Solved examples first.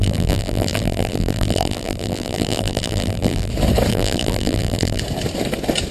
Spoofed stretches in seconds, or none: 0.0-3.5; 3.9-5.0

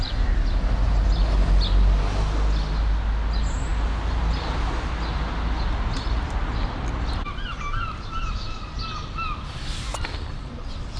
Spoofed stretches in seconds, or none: none

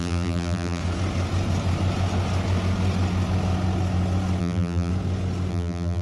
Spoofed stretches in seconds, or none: 0.0-0.8; 4.4-4.9; 5.5-6.0

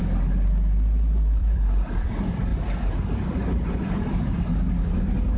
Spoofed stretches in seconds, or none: 1.4-2.1